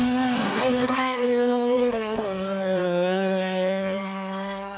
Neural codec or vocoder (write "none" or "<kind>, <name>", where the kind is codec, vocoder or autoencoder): codec, SNAC